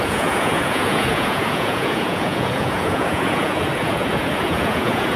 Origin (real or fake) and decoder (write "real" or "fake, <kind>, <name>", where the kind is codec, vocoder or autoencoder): fake, vocoder, Vocos